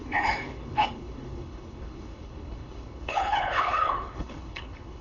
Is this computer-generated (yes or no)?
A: yes